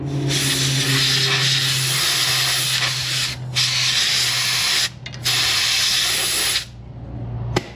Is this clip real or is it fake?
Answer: real